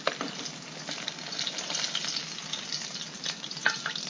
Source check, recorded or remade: recorded